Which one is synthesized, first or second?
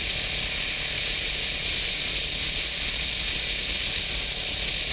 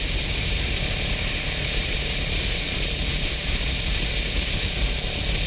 second